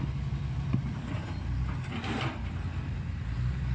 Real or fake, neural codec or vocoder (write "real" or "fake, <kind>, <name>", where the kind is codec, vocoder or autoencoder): real